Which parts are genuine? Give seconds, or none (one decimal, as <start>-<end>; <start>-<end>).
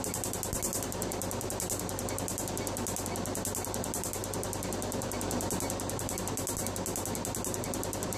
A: 0.0-8.2